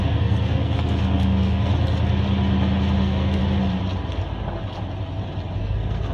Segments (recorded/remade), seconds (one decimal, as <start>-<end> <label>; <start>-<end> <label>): 0.0-1.7 remade; 1.7-3.0 recorded; 3.0-3.4 remade; 3.4-5.6 recorded; 5.6-6.1 remade